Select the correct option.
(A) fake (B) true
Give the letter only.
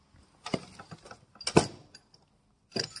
B